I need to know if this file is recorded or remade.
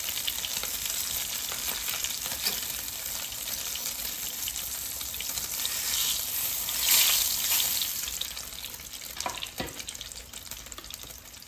recorded